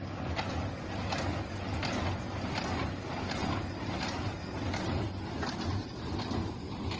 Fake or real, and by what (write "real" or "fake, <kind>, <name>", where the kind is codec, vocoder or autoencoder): real